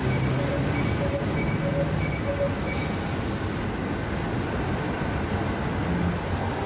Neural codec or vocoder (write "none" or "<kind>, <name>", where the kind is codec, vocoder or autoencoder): none